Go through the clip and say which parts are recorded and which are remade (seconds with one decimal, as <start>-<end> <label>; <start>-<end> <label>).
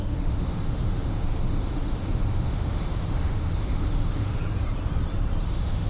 0.0-4.4 remade; 4.4-5.4 recorded; 5.4-5.9 remade